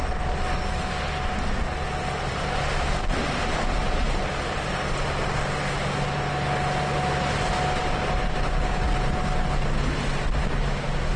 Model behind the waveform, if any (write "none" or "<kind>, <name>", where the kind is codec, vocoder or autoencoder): none